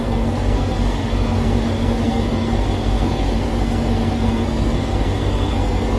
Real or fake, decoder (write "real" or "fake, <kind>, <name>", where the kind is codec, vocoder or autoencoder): fake, codec, SNAC